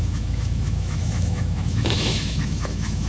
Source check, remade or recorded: remade